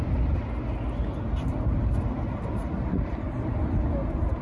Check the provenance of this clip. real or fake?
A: real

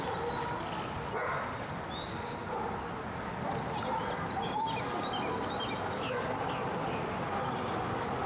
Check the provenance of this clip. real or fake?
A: real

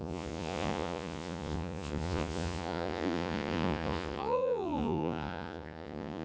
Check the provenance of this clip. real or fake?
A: fake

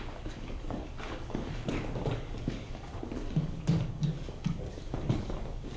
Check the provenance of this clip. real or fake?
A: fake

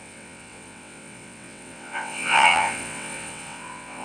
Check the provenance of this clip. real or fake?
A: fake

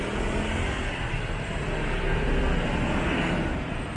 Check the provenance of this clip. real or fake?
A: real